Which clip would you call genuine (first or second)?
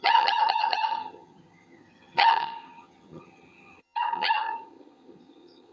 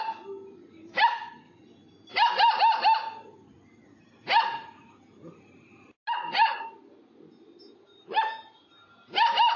second